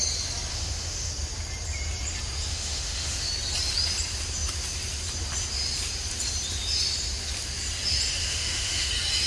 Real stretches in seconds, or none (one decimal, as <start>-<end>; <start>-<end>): 0.0-0.5; 1.1-2.5; 3.3-8.2; 8.9-9.3

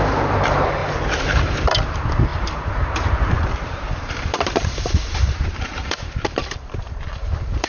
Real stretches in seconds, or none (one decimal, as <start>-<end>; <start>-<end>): none

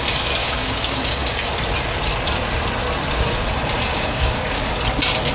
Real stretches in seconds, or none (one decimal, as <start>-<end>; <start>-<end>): 0.0-0.4; 1.5-3.9; 4.6-5.3

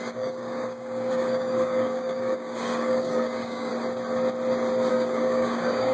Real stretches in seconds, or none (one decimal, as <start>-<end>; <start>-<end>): 3.7-4.9

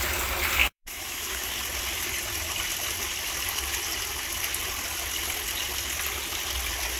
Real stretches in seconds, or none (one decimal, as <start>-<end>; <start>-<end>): 0.0-0.6; 1.5-7.0

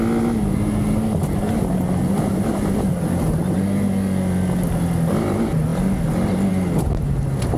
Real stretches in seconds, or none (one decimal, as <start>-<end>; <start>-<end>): 0.0-7.6

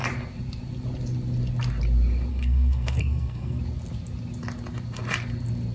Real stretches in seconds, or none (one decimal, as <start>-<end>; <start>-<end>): 0.0-2.3; 3.6-5.7